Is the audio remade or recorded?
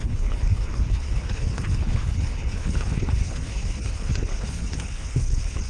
remade